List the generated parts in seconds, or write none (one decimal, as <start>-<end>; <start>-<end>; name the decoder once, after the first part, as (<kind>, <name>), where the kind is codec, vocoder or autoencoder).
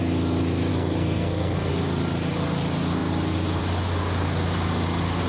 0.7-1.7 (codec, SNAC)